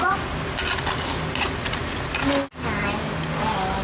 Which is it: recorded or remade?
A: recorded